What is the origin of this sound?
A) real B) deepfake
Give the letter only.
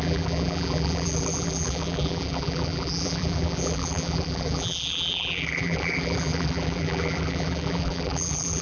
B